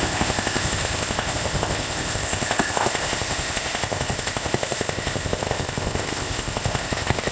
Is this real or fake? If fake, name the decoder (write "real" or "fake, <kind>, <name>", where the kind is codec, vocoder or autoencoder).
fake, codec, ZipCodec